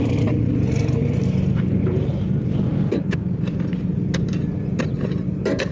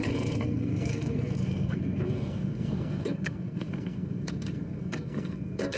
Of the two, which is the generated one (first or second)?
second